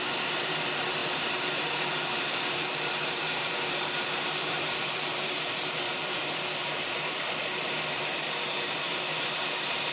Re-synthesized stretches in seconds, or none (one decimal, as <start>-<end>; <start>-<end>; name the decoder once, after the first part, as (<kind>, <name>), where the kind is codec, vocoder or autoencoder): 0.0-9.9 (vocoder, BigVGAN v2)